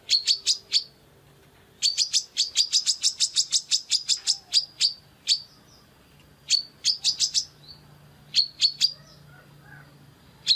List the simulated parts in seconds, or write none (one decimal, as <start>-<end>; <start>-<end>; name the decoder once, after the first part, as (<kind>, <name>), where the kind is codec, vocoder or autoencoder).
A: none